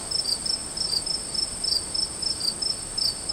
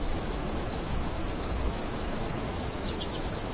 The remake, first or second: second